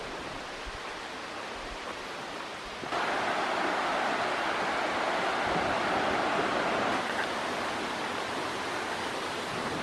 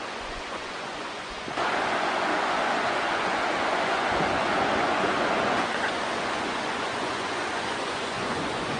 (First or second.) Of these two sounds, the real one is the first